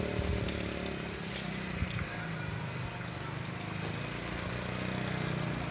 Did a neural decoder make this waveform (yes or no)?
no